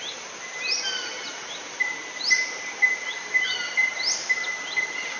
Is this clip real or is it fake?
real